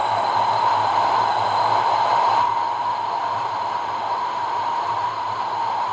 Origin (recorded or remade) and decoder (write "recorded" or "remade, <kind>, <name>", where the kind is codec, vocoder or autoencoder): recorded